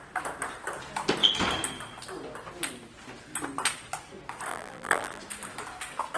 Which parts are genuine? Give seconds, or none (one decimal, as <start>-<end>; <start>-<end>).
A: 0.0-4.5; 5.2-6.2